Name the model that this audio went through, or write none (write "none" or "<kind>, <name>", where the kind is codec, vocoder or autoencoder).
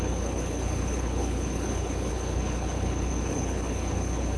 codec, HILCodec